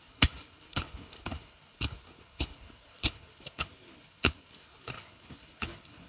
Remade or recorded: remade